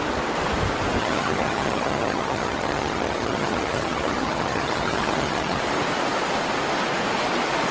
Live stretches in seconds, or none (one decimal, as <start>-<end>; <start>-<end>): 0.0-1.0; 5.6-7.7